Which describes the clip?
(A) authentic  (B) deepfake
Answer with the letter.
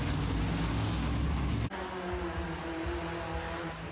A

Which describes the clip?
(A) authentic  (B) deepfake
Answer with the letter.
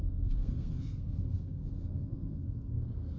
B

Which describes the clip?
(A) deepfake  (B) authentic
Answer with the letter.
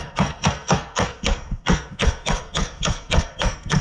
A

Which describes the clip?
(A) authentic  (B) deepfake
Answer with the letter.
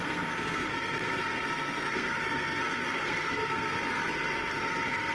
B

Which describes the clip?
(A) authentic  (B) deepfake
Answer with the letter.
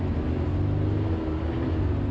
A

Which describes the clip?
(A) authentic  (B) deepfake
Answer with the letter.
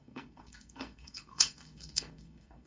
B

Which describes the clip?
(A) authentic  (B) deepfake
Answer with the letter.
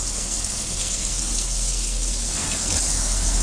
B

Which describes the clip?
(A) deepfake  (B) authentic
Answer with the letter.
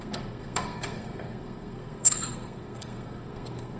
A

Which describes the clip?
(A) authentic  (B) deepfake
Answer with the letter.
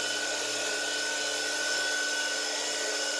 A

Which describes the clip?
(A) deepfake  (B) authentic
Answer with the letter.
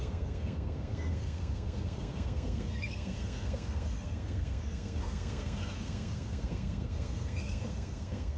A